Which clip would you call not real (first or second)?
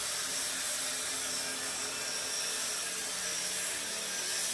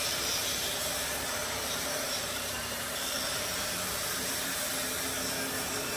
second